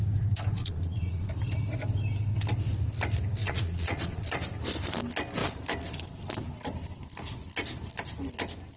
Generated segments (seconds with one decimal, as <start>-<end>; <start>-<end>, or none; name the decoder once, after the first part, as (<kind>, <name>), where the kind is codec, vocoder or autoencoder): 0.6-1.3 (vocoder, Vocos); 3.4-4.2